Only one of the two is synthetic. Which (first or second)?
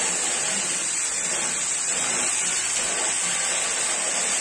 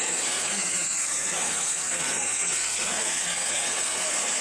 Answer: second